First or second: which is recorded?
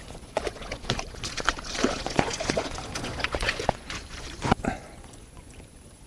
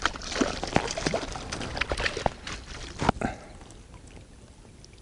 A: second